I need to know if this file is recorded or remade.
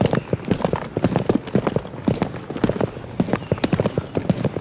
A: recorded